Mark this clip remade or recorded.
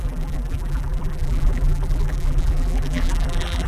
remade